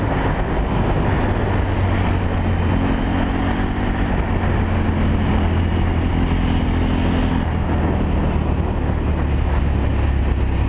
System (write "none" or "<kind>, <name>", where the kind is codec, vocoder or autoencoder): none